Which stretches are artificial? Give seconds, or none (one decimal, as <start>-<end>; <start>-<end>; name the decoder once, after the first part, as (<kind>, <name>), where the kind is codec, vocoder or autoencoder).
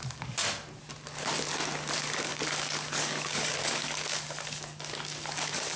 0.0-0.4 (codec, DAC); 1.9-5.8